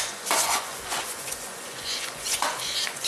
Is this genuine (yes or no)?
no